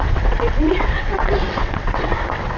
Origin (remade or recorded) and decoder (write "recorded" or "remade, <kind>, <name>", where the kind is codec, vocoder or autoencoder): remade, vocoder, WaveNeXt